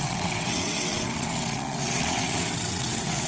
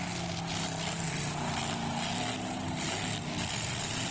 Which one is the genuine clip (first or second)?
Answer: second